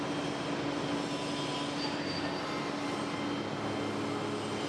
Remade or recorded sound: recorded